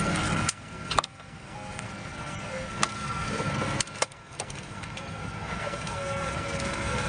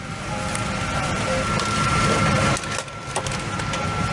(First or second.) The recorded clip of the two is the second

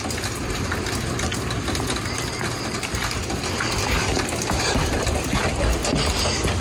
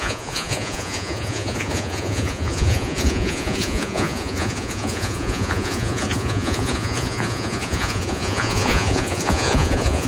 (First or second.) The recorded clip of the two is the first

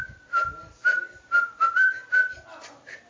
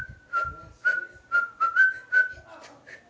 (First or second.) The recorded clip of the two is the second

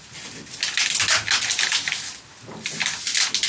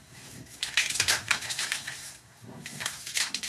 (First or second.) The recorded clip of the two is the first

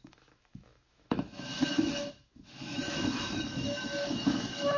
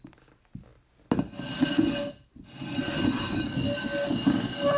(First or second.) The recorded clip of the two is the second